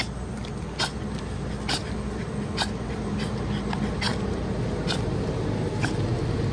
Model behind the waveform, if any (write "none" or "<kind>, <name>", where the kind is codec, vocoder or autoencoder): none